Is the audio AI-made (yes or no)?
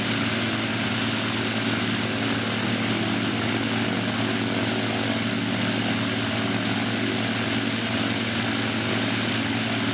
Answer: no